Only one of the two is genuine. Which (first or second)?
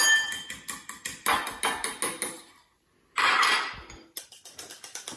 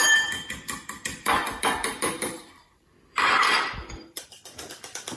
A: first